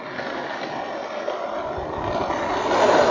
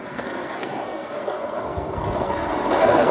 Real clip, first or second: first